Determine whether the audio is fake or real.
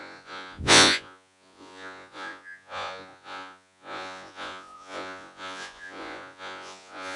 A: fake